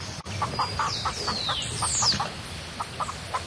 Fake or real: real